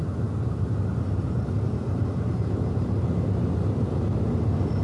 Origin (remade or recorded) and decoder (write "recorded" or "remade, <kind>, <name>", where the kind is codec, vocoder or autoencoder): recorded